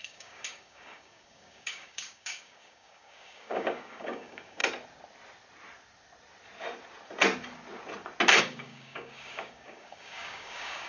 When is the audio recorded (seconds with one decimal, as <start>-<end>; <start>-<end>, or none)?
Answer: 4.6-8.4